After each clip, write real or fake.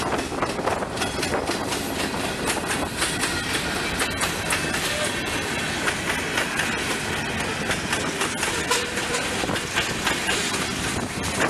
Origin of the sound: real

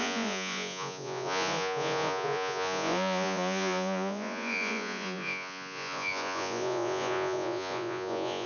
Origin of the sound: fake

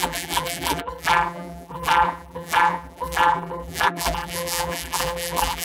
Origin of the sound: fake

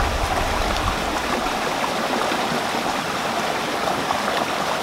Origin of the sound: real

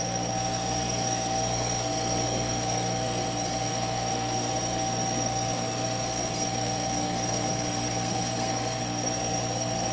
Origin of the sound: fake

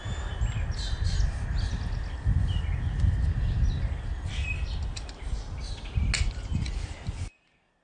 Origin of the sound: real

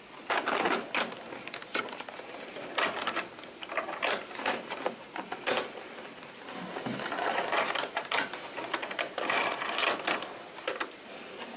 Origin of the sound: real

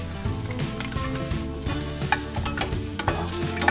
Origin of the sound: real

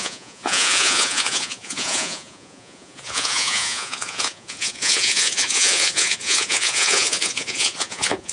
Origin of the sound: fake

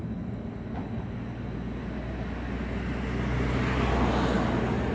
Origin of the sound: real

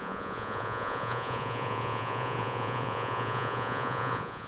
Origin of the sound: fake